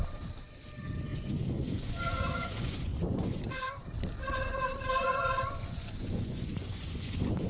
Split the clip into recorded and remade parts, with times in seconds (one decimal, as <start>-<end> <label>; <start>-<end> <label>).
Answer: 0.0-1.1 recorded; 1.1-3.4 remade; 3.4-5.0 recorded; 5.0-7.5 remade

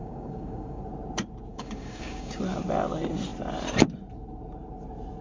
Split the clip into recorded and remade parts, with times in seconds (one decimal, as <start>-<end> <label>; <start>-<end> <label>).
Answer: 0.0-0.8 remade; 0.8-1.5 recorded; 1.5-2.4 remade; 2.4-5.2 recorded

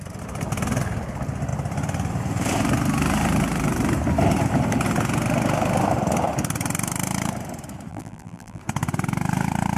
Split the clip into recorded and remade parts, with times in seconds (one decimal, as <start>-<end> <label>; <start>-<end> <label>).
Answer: 0.0-7.9 recorded; 7.9-8.6 remade; 8.6-9.8 recorded

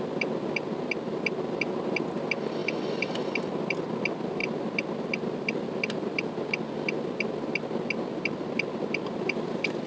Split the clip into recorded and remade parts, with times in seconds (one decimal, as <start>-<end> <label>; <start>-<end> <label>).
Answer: 0.0-9.9 recorded

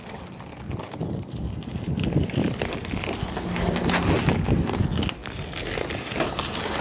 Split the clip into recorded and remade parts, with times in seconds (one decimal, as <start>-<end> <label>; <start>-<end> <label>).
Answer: 0.0-6.8 recorded